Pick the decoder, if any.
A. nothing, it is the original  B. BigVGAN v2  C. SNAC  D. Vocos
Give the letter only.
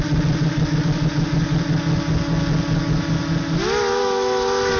A